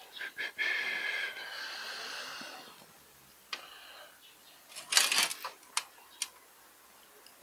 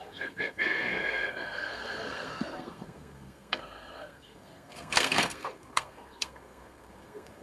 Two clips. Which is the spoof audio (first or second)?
second